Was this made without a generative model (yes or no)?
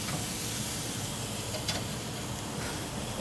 yes